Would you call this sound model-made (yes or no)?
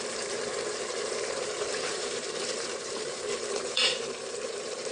yes